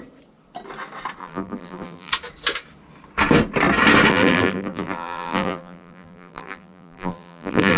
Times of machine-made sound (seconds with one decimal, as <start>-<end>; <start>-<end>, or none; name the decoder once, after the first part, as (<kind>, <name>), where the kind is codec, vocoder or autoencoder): 1.2-2.1 (vocoder, BigVGAN v2); 4.1-7.8